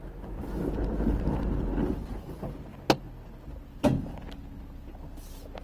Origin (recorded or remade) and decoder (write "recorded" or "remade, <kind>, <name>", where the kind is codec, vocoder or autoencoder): recorded